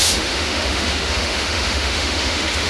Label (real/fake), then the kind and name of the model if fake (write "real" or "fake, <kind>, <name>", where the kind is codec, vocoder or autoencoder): fake, autoencoder, DAC-VAE